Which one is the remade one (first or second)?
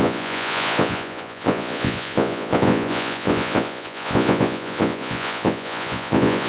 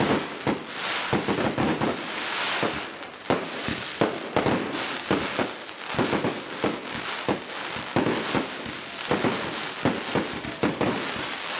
first